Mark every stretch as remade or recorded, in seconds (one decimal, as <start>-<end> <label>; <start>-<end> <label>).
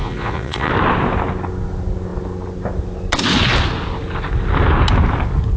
0.0-0.7 remade; 0.7-5.6 recorded